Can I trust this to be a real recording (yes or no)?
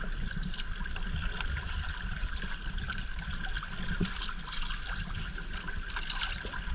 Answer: yes